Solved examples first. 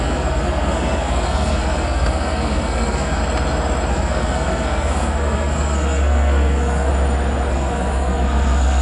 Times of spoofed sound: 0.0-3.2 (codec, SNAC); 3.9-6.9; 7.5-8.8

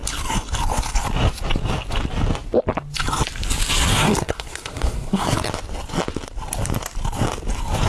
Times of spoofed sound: 3.9-5.5 (codec, SNAC)

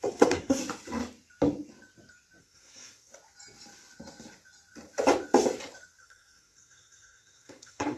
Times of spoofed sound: 0.0-0.6 (codec, SNAC); 2.4-3.1; 6.0-8.0

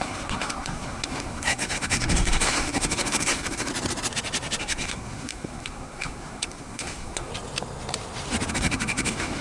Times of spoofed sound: 0.0-3.7 (codec, SNAC); 4.6-7.3; 8.5-9.4

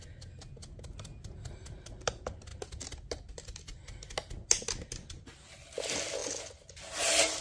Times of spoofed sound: none